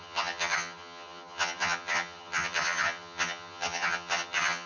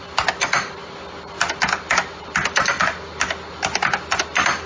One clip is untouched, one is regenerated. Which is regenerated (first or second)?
first